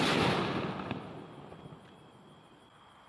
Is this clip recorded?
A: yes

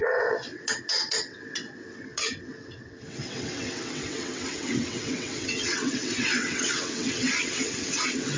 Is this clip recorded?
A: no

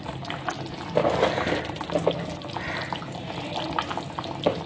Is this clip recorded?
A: yes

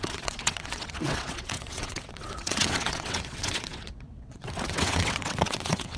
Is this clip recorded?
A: no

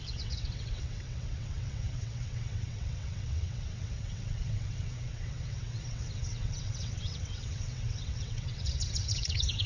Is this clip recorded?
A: no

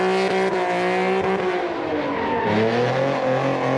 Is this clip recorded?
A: yes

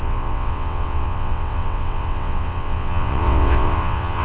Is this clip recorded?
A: no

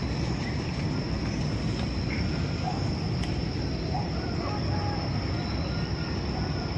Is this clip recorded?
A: yes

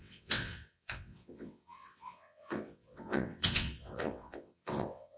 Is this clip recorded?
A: no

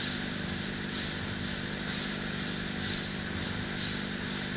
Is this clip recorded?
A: yes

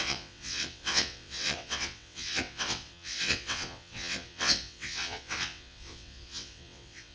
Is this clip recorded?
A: no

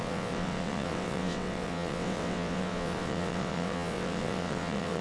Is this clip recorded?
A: no